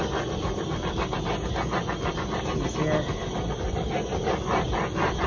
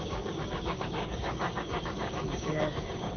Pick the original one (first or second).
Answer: first